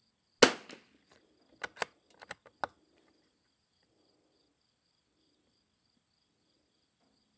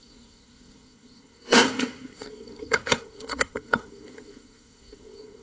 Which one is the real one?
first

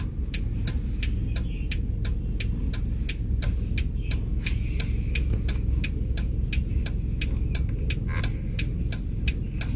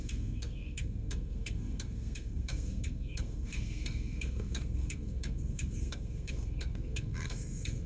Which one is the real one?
first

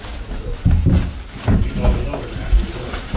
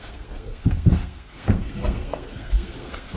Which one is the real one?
first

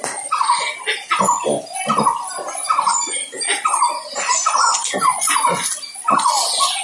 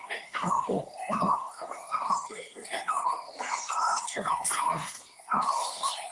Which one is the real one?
first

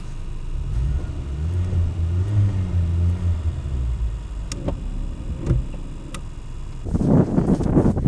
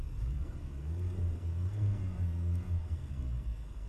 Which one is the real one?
first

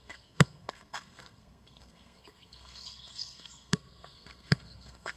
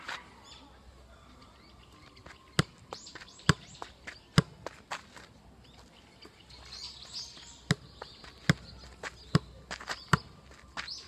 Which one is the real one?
second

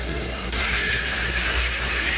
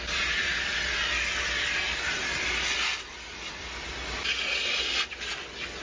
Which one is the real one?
second